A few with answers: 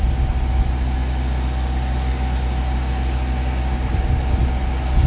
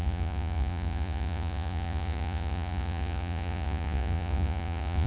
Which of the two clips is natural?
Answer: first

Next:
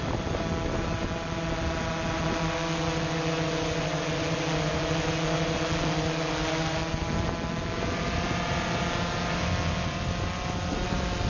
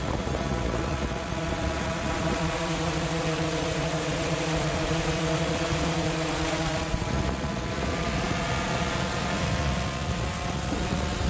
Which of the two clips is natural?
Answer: first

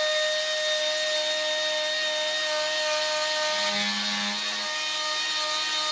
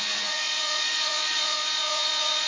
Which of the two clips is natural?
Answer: first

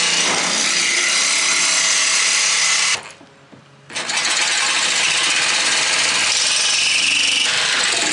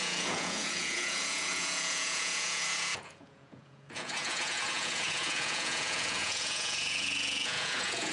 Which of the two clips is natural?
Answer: first